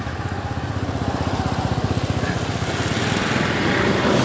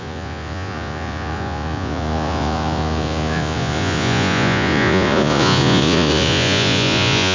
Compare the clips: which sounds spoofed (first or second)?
second